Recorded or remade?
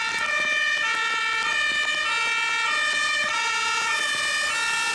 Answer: recorded